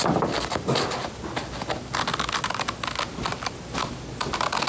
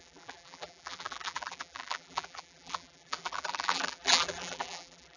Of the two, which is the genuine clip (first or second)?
first